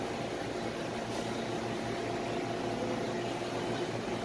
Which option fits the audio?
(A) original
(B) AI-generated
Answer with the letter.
A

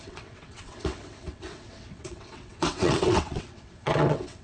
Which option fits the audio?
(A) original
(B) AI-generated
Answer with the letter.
B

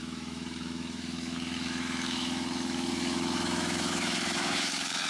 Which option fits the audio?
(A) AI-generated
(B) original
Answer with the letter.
A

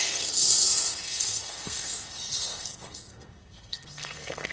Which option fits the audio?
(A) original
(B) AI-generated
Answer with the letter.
B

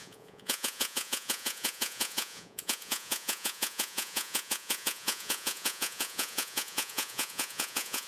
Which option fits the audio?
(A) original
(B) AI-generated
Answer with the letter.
B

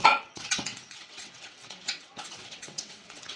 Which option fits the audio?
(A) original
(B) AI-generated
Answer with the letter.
B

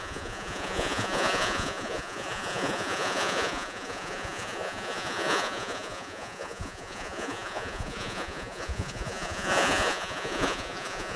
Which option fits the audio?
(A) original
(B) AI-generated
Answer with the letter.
B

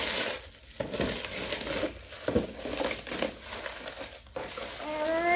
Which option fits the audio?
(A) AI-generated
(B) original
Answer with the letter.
B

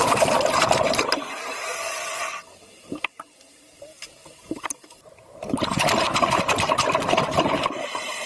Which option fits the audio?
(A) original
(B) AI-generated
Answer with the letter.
B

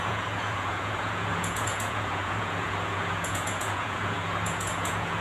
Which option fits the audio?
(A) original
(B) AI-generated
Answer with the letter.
B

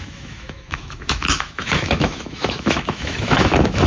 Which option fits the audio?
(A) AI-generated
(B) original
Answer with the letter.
A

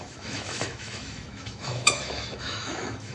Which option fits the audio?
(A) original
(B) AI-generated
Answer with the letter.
B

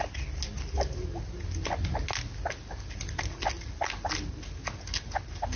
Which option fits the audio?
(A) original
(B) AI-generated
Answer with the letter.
A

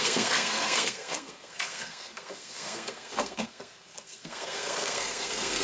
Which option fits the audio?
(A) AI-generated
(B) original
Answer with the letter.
A